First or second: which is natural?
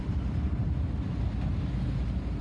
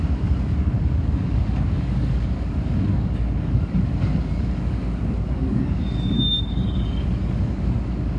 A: first